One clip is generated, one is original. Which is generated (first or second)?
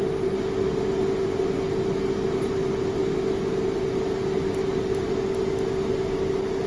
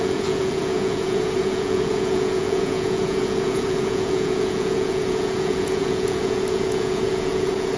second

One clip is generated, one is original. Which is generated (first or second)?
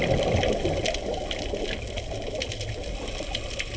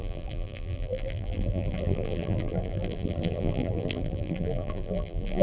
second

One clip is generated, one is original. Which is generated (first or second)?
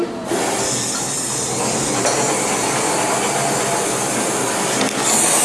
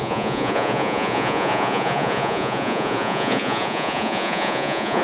second